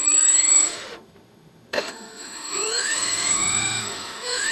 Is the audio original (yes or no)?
no